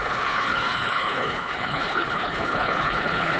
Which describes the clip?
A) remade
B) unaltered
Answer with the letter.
A